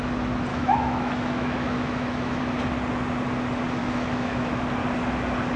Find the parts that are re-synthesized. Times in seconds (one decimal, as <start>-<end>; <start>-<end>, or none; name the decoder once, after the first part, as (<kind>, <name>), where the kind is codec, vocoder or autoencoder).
0.5-2.4 (autoencoder, DAC-VAE); 3.8-4.6